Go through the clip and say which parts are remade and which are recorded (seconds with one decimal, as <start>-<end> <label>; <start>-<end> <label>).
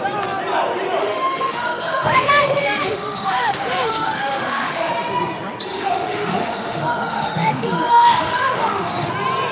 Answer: 0.0-1.0 recorded; 1.0-4.9 remade; 4.9-5.7 recorded; 5.7-9.1 remade; 9.1-9.5 recorded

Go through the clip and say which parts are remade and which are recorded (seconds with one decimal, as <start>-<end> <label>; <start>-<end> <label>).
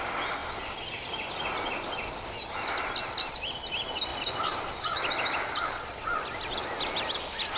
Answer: 0.0-0.4 recorded; 0.4-2.9 remade; 2.9-4.1 recorded; 4.1-7.6 remade